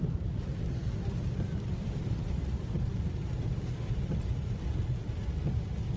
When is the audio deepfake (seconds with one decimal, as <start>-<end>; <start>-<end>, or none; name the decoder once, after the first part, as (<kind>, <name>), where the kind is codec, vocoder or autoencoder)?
none